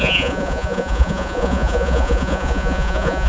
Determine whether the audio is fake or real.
fake